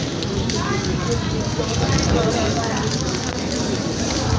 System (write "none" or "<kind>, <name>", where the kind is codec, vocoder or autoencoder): none